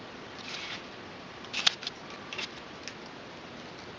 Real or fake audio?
real